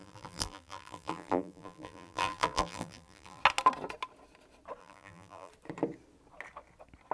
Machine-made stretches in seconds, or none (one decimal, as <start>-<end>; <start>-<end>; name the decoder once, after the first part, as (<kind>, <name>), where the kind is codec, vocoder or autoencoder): 0.0-3.4 (vocoder, BigVGAN v2); 4.8-5.5